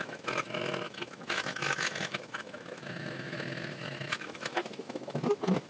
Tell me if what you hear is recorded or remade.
remade